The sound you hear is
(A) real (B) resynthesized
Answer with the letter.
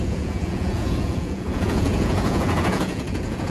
B